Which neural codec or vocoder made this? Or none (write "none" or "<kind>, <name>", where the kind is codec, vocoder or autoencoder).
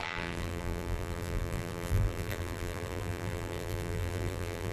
vocoder, BigVGAN v2